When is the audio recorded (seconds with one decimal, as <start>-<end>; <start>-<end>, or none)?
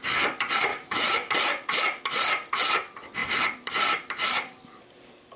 0.0-0.7; 1.3-5.4